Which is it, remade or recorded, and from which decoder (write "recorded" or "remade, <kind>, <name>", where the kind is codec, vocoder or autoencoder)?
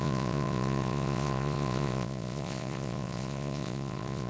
remade, vocoder, Vocos